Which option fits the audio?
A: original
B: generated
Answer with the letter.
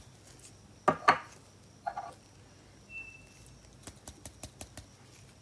A